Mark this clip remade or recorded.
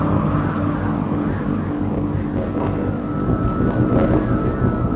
recorded